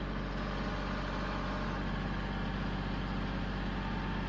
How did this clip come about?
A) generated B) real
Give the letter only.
B